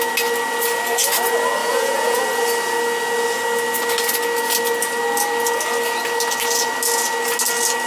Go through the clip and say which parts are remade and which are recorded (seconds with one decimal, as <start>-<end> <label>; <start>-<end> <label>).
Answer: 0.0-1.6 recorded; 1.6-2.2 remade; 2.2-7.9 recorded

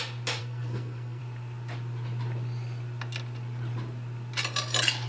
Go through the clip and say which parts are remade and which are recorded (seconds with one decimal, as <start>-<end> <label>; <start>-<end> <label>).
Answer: 0.0-0.4 recorded; 0.4-1.2 remade; 1.2-5.1 recorded

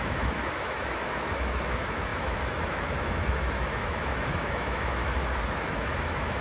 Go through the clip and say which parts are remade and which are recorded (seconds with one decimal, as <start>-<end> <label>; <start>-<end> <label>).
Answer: 0.0-6.4 remade

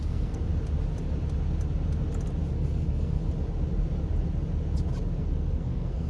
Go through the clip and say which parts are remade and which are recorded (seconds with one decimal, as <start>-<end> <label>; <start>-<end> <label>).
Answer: 0.0-0.5 remade; 0.5-2.5 recorded; 2.5-3.2 remade; 3.2-5.2 recorded; 5.2-6.1 remade